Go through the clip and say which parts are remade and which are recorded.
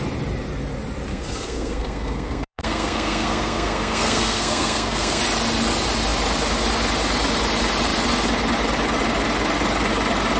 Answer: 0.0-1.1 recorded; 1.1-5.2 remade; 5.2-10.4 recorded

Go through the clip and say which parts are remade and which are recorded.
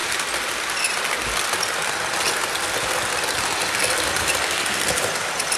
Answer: 0.0-5.6 recorded